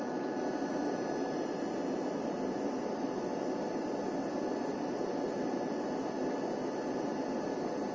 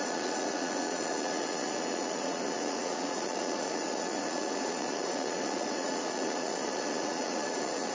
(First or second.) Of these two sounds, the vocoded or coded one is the second